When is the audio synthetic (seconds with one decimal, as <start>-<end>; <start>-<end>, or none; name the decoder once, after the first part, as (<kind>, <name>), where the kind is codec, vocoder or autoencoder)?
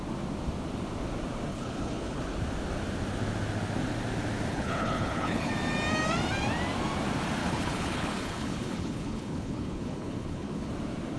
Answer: 1.5-2.2 (codec, HILCodec); 4.5-5.5; 7.4-10.7